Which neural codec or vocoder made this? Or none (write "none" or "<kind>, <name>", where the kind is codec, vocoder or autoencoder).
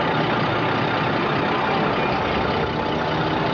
none